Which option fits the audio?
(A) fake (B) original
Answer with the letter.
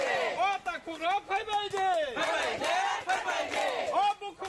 B